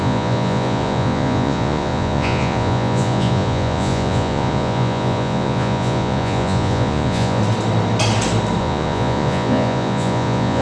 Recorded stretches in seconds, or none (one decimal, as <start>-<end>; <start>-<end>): 7.4-8.6